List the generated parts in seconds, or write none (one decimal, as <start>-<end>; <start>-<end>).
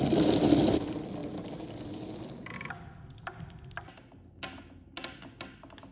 none